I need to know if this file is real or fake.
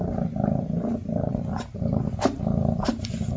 fake